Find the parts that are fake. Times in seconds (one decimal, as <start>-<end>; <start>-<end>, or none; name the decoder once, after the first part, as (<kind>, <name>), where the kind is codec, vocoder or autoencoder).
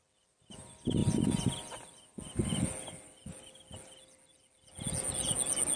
none